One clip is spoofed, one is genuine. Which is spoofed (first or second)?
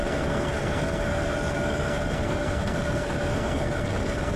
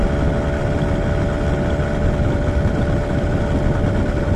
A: first